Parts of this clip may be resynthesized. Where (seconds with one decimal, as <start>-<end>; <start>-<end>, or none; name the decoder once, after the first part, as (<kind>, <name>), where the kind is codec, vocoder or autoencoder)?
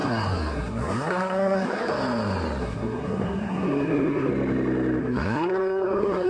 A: 0.0-1.9 (codec, SNAC); 2.6-4.3; 5.0-6.3